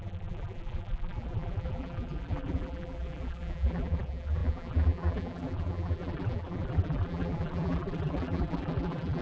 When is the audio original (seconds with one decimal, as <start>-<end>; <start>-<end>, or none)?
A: none